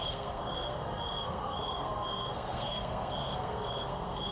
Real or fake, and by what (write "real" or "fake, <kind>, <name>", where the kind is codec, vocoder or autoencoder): fake, codec, SNAC